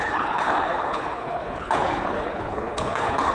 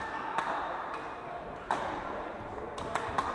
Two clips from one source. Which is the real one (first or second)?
second